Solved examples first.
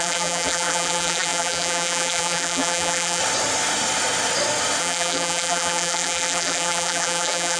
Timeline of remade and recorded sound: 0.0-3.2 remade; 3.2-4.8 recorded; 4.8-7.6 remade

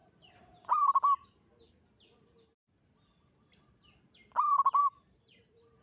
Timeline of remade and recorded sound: 0.0-0.8 remade; 0.8-4.8 recorded; 4.8-5.8 remade

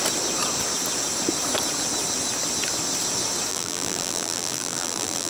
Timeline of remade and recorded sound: 0.0-3.5 recorded; 3.5-5.3 remade

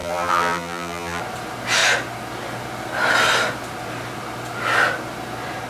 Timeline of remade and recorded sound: 0.0-1.2 remade; 1.2-5.7 recorded